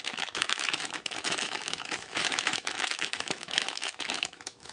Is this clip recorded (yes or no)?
no